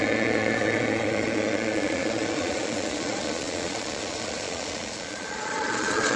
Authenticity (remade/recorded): remade